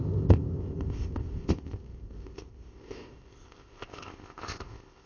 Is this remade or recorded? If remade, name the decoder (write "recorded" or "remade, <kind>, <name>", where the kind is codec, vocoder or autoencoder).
remade, codec, ZipCodec